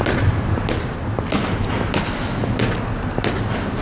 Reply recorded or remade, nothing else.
recorded